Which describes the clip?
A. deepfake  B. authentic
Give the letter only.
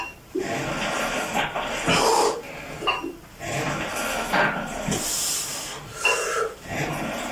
B